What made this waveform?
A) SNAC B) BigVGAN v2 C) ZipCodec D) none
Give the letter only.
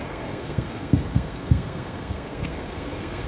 A